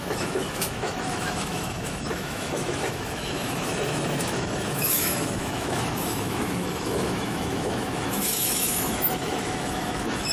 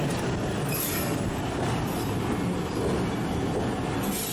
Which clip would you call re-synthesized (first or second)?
first